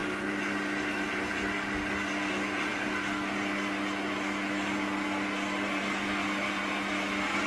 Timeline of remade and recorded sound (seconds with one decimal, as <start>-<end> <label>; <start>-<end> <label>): 0.0-7.5 recorded